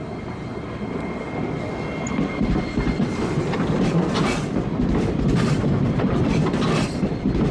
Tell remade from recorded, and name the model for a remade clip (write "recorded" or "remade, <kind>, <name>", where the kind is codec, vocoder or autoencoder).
recorded